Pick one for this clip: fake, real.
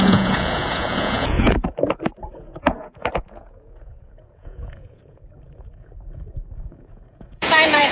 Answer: fake